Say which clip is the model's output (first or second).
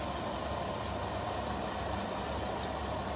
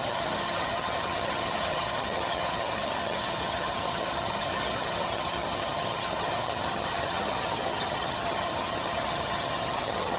second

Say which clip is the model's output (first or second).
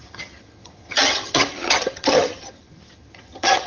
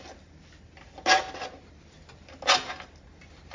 first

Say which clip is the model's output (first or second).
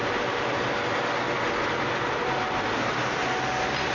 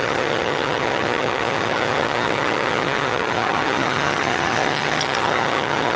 second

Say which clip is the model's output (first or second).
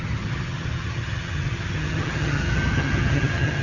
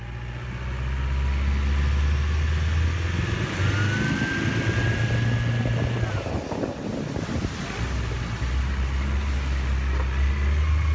first